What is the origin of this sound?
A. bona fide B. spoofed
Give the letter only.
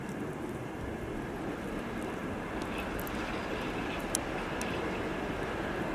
A